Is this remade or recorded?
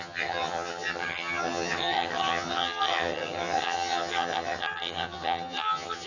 remade